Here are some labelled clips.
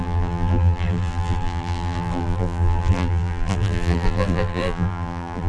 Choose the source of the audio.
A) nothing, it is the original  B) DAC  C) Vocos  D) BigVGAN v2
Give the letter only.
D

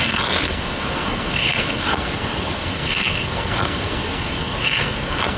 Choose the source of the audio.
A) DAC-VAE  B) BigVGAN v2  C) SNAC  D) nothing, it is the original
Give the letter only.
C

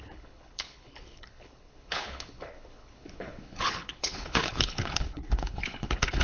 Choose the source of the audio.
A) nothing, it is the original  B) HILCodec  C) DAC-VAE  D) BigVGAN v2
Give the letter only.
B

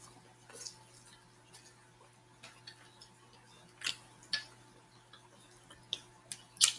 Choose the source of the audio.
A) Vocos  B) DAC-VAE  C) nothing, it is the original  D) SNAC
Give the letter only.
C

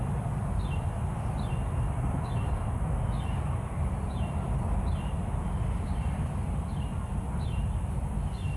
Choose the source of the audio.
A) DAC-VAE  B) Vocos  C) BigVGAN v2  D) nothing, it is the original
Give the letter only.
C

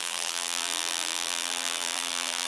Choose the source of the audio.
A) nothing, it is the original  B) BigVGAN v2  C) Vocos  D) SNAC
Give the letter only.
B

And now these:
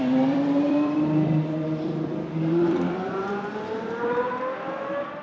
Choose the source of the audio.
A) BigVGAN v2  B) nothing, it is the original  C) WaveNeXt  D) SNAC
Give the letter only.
A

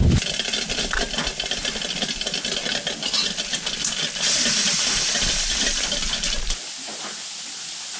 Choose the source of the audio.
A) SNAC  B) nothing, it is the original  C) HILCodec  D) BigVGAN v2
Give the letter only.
B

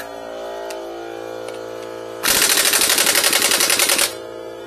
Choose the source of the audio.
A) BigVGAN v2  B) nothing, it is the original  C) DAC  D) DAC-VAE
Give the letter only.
B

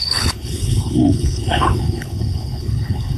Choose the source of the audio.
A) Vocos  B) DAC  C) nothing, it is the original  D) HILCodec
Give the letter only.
D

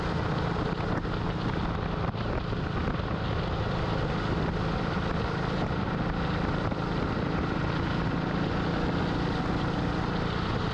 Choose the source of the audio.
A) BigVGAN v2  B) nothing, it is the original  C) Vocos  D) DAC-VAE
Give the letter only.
B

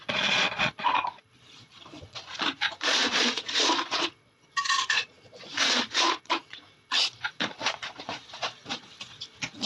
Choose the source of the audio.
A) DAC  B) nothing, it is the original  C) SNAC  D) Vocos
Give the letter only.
D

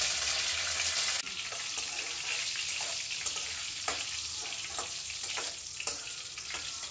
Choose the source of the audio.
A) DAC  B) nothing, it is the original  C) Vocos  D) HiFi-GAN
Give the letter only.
B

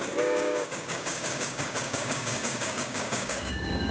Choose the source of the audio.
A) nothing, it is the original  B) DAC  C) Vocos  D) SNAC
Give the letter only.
B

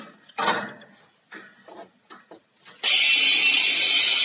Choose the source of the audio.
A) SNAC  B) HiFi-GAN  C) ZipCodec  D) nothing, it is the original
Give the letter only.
D